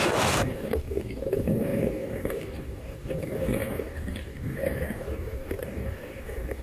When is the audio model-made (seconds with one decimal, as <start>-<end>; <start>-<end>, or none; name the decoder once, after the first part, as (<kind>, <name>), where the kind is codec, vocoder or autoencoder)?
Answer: 0.0-6.6 (codec, DAC)